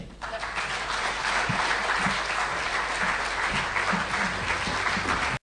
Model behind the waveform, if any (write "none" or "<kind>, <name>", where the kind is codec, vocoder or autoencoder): none